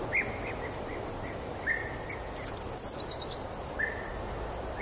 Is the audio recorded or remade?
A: recorded